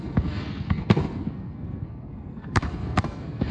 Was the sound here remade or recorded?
remade